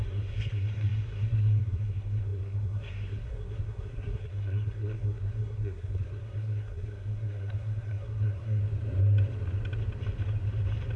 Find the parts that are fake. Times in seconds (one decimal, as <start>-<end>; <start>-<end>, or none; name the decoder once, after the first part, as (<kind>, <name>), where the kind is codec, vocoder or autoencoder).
0.0-8.6 (codec, SNAC)